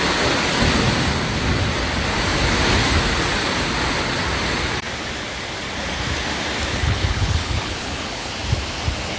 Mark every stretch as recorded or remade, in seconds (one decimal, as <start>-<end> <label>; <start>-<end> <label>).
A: 0.0-6.7 recorded; 6.7-8.3 remade; 8.3-9.2 recorded